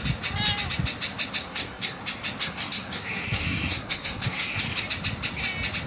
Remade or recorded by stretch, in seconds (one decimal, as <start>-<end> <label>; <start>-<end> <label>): 0.0-1.4 recorded; 1.4-2.0 remade; 2.0-2.4 recorded; 2.4-4.6 remade; 4.6-5.9 recorded